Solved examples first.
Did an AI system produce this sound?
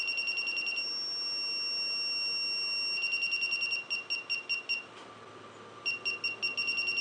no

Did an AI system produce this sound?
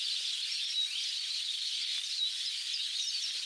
no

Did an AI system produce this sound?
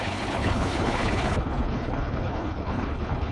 yes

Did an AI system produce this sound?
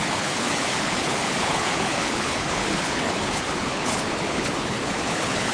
yes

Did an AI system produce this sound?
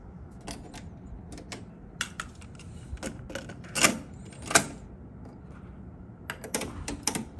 no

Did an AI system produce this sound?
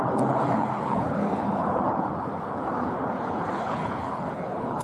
yes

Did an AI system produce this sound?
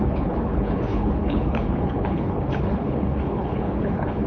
yes